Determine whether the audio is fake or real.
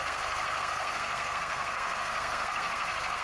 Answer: fake